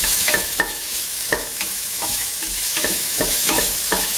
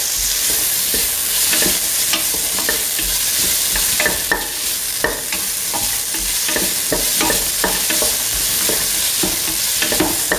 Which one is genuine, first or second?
second